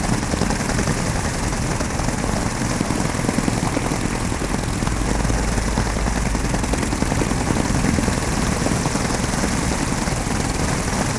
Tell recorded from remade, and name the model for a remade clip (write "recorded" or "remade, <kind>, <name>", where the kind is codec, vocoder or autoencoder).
recorded